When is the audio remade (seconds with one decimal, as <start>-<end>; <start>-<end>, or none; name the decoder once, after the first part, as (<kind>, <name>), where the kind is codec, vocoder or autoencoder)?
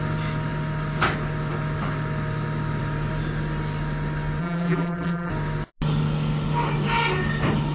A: 4.4-5.3 (vocoder, BigVGAN v2)